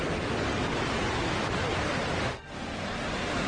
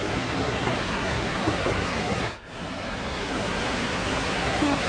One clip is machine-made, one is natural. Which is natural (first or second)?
first